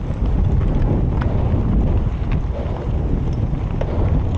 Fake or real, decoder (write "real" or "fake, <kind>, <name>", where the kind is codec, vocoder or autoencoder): real